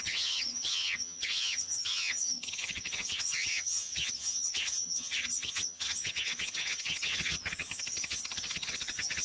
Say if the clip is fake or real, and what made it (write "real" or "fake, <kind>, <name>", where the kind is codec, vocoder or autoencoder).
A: fake, vocoder, HiFi-GAN